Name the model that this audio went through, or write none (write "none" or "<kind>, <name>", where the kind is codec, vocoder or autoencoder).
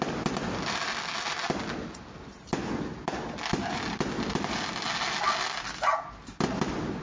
none